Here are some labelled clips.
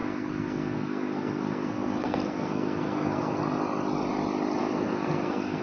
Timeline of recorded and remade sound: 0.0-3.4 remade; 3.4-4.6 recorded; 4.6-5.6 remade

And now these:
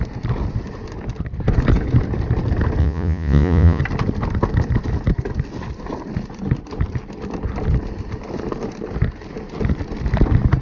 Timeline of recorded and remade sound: 0.0-2.8 recorded; 2.8-3.8 remade; 3.8-10.6 recorded